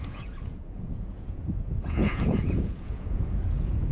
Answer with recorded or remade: remade